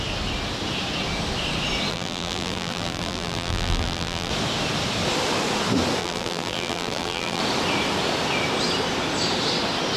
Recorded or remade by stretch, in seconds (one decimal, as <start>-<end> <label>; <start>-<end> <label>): 0.0-1.9 recorded; 1.9-4.3 remade; 4.3-6.0 recorded; 6.0-7.4 remade; 7.4-10.0 recorded